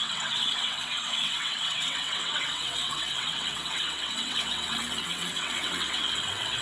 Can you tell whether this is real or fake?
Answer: fake